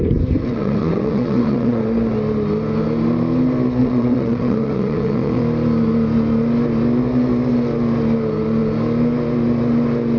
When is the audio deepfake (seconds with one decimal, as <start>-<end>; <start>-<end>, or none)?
0.4-1.8; 3.8-5.4